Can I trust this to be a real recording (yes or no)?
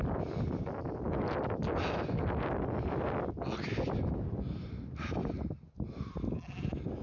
yes